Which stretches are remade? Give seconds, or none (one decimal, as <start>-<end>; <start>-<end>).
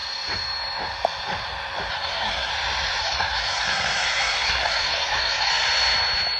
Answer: 1.9-2.5; 3.0-5.5